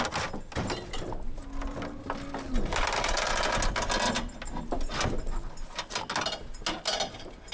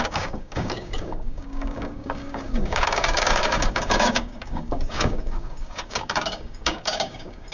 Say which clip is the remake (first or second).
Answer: second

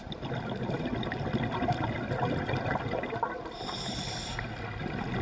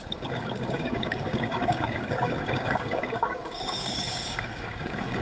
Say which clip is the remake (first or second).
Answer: second